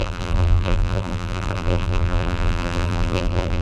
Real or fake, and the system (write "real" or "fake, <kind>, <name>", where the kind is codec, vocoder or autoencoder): fake, vocoder, BigVGAN v2